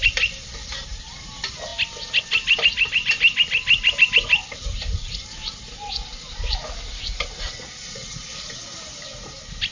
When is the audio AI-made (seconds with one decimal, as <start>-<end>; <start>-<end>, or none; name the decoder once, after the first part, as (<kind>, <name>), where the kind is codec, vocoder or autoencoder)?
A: none